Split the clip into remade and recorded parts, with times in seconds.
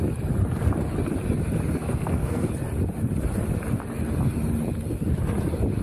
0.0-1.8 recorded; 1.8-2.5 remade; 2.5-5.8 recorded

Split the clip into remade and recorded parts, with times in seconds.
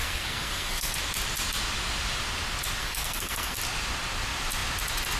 0.0-1.0 remade; 1.0-2.8 recorded; 2.8-3.6 remade; 3.6-5.2 recorded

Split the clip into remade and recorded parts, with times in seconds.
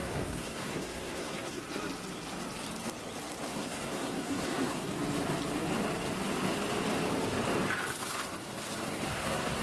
0.0-1.6 remade; 1.6-3.5 recorded; 3.5-4.9 remade; 4.9-9.1 recorded; 9.1-9.6 remade